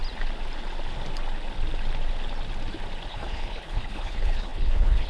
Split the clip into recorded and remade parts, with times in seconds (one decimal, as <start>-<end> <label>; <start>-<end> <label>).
0.0-3.1 recorded; 3.1-5.1 remade